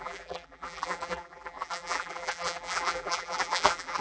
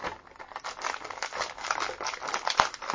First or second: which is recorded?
second